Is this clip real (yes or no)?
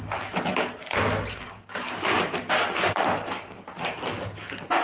yes